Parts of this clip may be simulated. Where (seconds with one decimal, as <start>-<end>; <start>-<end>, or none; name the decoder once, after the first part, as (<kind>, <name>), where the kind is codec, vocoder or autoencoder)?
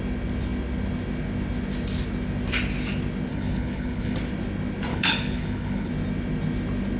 3.3-4.2 (codec, HILCodec); 4.9-5.9